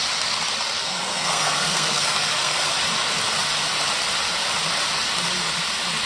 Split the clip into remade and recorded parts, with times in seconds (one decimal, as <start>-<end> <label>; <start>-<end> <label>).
0.0-0.8 recorded; 0.8-2.7 remade; 2.7-6.1 recorded